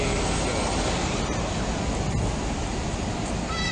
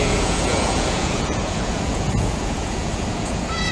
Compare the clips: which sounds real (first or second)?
first